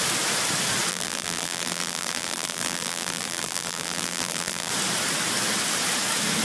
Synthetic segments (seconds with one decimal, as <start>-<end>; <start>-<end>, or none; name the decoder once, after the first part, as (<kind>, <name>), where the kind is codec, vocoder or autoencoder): 0.9-4.7 (vocoder, BigVGAN v2)